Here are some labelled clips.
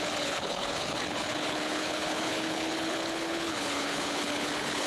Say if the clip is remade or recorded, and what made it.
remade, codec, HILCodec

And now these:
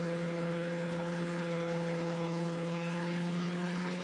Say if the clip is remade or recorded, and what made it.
remade, codec, HILCodec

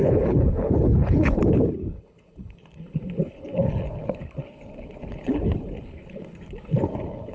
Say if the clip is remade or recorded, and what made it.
remade, codec, HILCodec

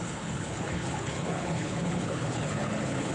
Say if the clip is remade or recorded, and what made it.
remade, codec, HILCodec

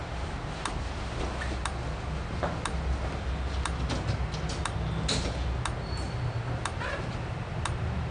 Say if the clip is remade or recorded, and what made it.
recorded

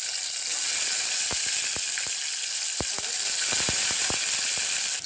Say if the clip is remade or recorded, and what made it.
recorded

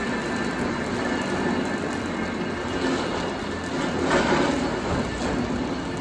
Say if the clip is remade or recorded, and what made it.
recorded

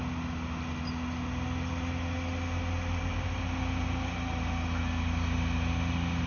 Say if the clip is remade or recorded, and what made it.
recorded